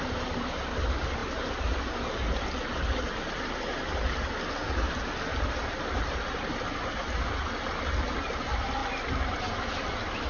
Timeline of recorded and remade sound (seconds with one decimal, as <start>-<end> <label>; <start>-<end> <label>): 0.0-10.3 recorded